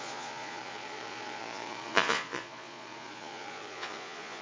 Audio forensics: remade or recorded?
remade